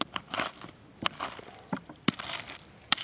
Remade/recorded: recorded